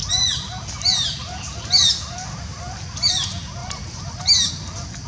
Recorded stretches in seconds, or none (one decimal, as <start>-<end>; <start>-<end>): 0.0-3.6; 4.5-5.1